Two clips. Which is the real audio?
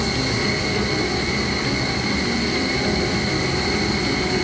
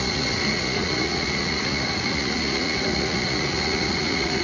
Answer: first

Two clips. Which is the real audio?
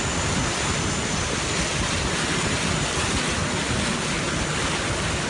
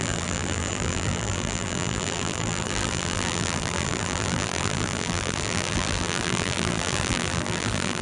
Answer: first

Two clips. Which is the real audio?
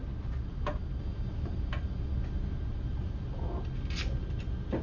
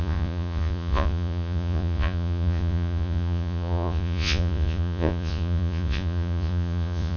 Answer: first